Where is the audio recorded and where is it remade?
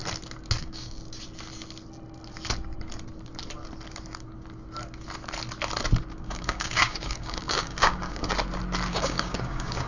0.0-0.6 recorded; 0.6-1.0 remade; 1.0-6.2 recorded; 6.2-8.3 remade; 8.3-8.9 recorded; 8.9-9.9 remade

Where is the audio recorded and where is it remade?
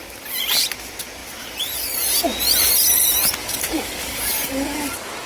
0.0-3.4 recorded; 3.4-5.3 remade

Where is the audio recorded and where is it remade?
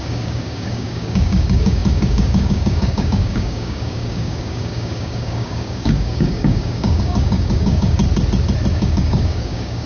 0.0-8.0 remade; 8.0-8.7 recorded; 8.7-9.9 remade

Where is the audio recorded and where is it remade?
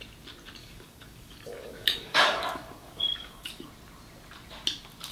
0.0-0.6 recorded; 0.6-3.7 remade; 3.7-5.1 recorded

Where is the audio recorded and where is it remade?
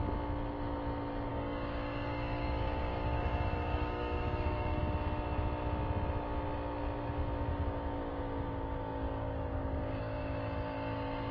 0.0-1.3 recorded; 1.3-4.8 remade; 4.8-7.5 recorded; 7.5-11.3 remade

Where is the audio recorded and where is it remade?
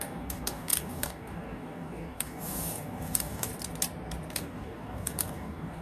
0.0-3.5 remade; 3.5-4.3 recorded; 4.3-5.8 remade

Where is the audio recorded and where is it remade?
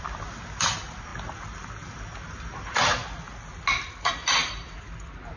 0.0-5.4 recorded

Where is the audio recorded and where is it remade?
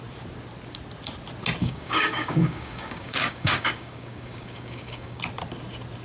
0.0-1.6 recorded; 1.6-5.2 remade; 5.2-6.0 recorded